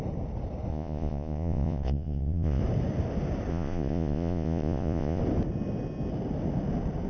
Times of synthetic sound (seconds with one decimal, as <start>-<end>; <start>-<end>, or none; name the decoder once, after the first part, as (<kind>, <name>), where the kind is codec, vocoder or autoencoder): 0.7-2.6 (vocoder, Vocos); 3.5-5.2